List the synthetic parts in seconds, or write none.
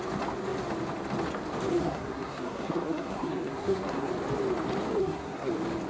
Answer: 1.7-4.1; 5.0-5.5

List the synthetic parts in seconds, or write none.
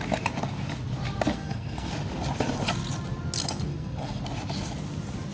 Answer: 1.3-1.9; 3.7-4.2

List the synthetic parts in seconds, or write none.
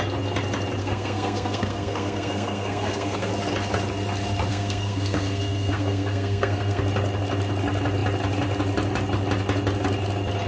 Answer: 0.8-3.3; 4.5-6.8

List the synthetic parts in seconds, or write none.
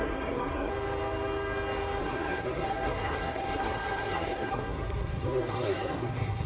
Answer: 0.0-0.7; 2.0-6.5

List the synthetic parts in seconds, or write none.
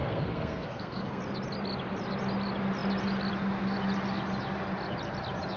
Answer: 0.0-1.2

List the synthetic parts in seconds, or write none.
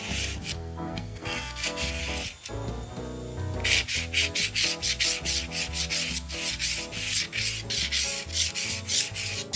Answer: 0.4-2.0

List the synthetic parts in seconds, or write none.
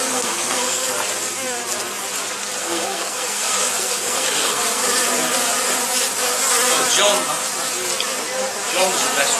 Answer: 0.0-0.9; 2.6-4.8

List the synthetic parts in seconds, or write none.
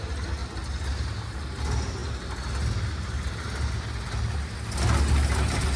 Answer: none